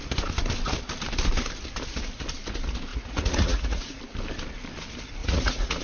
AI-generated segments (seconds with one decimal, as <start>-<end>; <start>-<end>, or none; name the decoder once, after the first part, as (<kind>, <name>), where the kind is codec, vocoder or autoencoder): 2.9-4.0 (vocoder, Vocos); 5.2-5.8

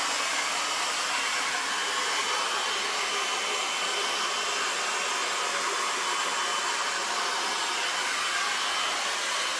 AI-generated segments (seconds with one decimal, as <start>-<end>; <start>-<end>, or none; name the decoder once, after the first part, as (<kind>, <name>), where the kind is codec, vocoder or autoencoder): none